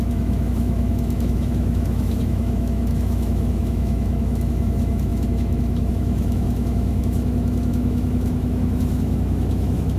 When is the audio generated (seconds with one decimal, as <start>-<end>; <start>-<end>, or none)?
0.0-10.0